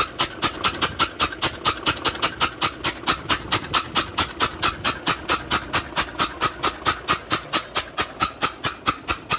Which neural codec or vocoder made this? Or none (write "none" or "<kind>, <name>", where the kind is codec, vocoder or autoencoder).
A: none